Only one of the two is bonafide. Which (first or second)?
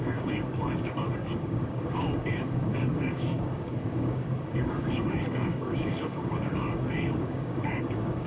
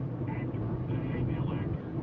second